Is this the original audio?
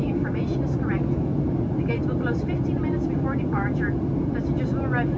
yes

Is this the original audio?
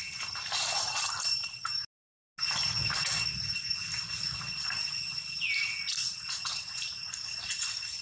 yes